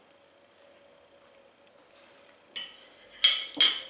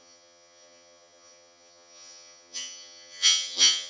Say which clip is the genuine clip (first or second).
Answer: first